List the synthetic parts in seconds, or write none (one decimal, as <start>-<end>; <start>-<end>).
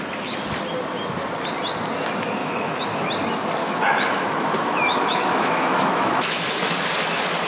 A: 2.4-3.1; 3.6-6.5